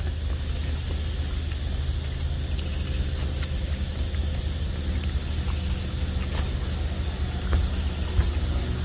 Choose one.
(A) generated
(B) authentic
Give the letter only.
B